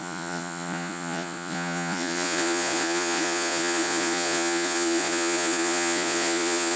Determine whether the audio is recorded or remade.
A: remade